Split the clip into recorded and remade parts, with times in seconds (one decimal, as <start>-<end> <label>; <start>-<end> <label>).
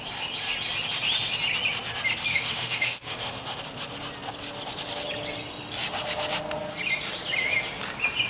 0.0-2.3 recorded; 2.3-3.6 remade; 3.6-8.3 recorded